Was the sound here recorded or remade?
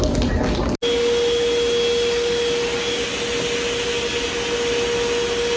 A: recorded